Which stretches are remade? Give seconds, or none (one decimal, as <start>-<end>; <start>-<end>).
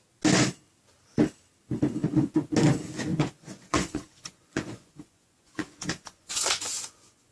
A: 2.0-2.5; 3.1-7.3